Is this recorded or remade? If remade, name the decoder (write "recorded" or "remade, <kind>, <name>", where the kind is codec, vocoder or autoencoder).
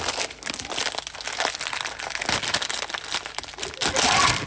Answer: recorded